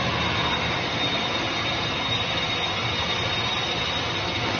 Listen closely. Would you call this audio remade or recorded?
recorded